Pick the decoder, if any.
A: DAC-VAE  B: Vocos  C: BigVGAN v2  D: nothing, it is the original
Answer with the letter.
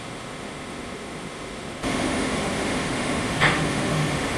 A